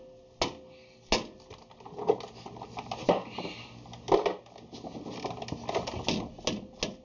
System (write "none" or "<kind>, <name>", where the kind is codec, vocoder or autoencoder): none